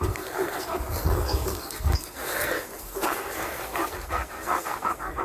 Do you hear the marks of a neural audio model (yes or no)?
yes